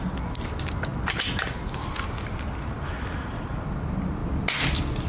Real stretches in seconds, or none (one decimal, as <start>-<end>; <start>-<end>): 0.0-5.1

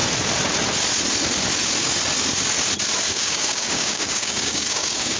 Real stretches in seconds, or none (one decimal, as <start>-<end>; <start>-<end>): 0.0-3.1

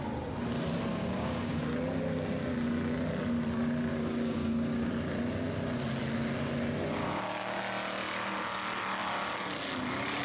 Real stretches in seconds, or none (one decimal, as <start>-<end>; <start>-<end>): 0.0-0.9; 1.6-3.9; 4.9-7.0; 7.6-10.2

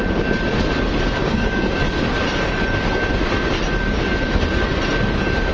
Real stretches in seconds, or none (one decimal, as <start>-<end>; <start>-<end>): 0.0-1.2; 1.7-5.5

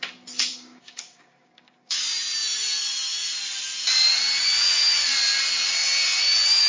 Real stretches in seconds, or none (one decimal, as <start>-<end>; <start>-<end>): 0.0-0.5; 2.0-6.7

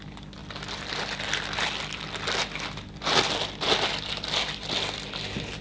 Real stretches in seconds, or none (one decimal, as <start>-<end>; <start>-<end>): 0.0-5.6

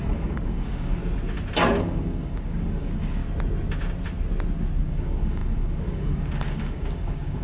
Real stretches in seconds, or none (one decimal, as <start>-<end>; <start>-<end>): 1.0-1.8; 3.2-4.8